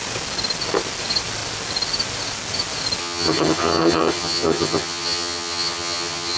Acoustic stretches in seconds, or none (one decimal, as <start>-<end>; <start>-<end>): 0.0-3.0